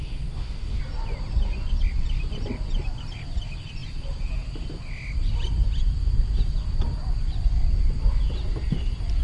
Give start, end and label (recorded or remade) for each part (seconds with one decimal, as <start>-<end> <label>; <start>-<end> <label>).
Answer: 0.0-0.8 remade; 0.8-9.2 recorded